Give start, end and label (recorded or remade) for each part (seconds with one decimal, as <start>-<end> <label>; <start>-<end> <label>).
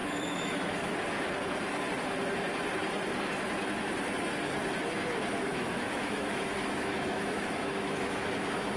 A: 0.0-0.9 remade; 0.9-5.5 recorded; 5.5-8.8 remade